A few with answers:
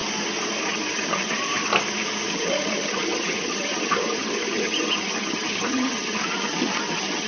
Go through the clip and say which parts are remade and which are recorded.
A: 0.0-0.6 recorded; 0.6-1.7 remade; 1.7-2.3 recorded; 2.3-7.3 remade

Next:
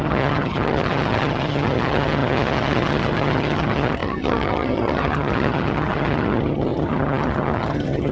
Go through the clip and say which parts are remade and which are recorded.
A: 0.0-8.1 remade

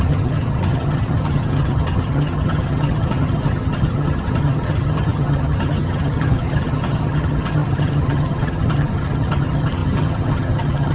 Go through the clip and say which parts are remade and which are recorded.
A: 0.0-10.9 remade

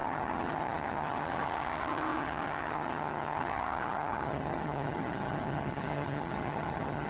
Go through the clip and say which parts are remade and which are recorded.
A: 0.0-7.1 remade

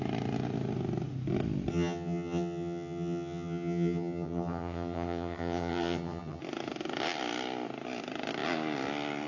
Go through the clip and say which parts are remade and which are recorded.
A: 0.0-1.7 recorded; 1.7-6.4 remade; 6.4-9.3 recorded

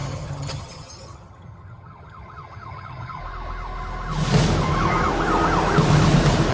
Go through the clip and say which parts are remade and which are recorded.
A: 0.0-3.2 remade; 3.2-6.5 recorded

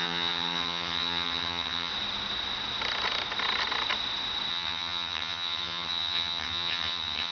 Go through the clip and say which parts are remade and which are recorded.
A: 0.0-1.9 remade; 1.9-4.5 recorded; 4.5-7.3 remade

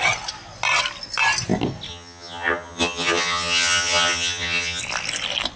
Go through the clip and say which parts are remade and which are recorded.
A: 0.0-1.9 recorded; 1.9-4.8 remade; 4.8-5.6 recorded